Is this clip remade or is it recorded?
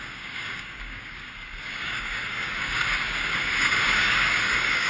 remade